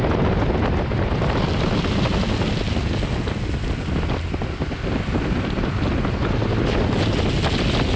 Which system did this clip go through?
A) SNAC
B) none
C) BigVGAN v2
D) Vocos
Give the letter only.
B